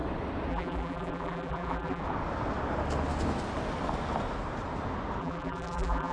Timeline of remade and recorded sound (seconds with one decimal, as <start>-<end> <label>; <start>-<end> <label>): 0.0-0.5 recorded; 0.5-2.0 remade; 2.0-5.2 recorded; 5.2-6.1 remade